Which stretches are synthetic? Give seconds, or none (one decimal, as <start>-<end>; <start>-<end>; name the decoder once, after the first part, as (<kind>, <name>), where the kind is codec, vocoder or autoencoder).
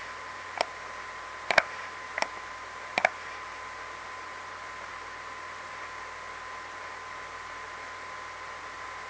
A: none